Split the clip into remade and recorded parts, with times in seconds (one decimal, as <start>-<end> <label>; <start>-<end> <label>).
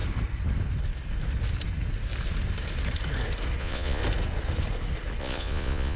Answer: 0.0-3.6 recorded; 3.6-4.0 remade; 4.0-5.2 recorded; 5.2-6.0 remade